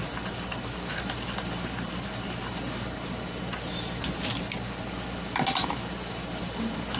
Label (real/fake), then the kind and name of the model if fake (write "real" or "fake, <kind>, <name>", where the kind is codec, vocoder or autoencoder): real